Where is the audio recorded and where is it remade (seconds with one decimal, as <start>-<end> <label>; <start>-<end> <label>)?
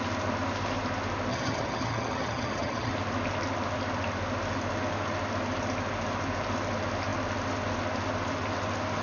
0.0-1.3 recorded; 1.3-2.9 remade; 2.9-9.0 recorded